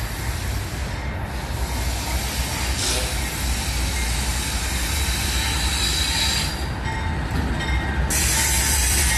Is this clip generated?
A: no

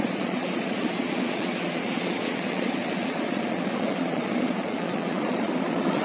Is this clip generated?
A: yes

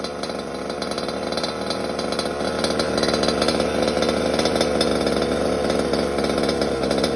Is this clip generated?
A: no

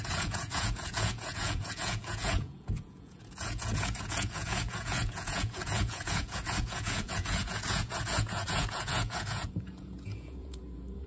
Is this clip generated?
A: yes